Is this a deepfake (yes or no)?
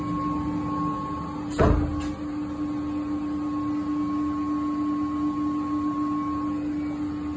no